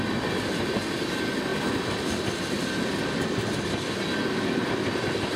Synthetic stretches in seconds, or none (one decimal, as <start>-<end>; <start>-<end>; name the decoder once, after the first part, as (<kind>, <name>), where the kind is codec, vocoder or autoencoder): none